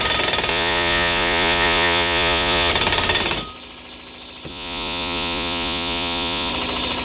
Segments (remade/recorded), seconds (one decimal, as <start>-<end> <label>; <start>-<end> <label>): 0.0-0.5 recorded; 0.5-2.7 remade; 2.7-4.5 recorded; 4.5-6.5 remade; 6.5-7.0 recorded